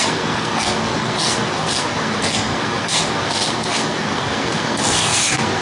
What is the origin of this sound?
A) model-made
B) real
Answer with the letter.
A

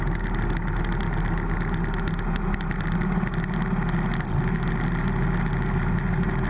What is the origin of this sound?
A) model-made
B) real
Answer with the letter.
B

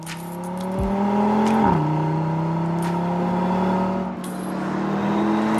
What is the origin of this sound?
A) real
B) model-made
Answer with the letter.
A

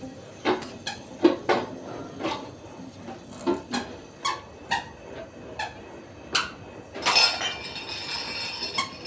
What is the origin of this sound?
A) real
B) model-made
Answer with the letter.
A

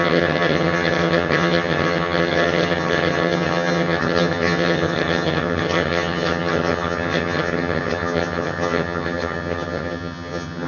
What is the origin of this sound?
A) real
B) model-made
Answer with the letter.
B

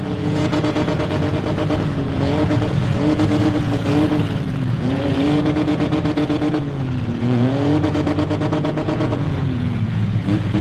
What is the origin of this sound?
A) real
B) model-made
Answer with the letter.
B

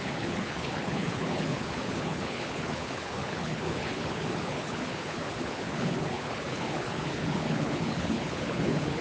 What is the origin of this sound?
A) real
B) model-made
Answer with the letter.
B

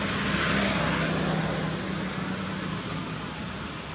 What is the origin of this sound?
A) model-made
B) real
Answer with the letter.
B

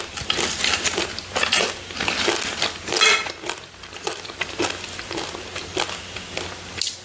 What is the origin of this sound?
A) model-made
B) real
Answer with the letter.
B